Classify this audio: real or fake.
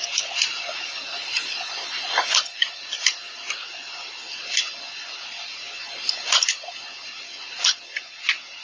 real